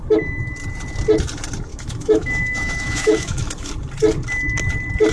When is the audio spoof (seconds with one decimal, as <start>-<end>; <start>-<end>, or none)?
1.7-3.7